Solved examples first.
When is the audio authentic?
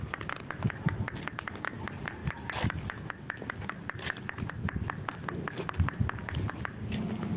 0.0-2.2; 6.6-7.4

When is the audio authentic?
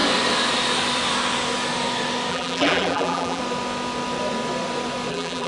0.0-2.3; 3.4-5.1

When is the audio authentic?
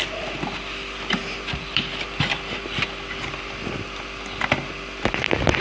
0.0-1.2; 3.2-5.6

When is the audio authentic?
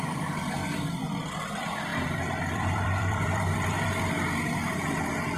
0.6-1.3